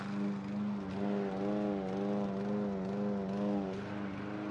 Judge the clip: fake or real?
real